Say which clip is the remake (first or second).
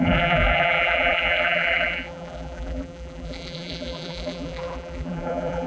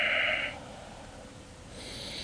first